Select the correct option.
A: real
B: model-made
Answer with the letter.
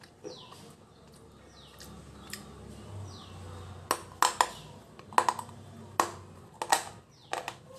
A